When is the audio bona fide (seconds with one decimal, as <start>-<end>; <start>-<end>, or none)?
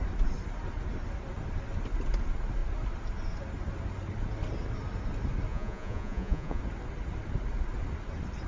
0.0-5.5; 6.6-8.5